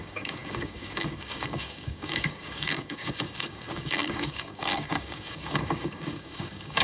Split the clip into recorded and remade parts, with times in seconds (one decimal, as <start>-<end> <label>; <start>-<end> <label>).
0.0-6.8 remade